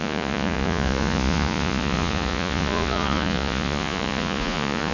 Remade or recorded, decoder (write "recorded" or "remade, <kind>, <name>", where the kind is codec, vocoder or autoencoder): remade, vocoder, Vocos